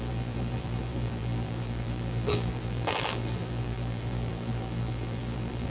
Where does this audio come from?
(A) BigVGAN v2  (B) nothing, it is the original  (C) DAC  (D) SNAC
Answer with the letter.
A